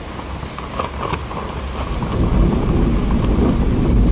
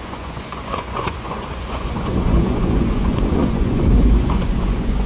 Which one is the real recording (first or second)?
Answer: first